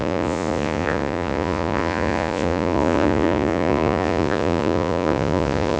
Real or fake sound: fake